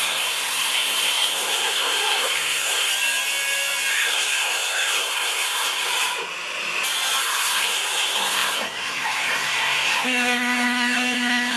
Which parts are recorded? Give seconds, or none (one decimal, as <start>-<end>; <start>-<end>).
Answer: 2.9-3.9; 5.9-7.2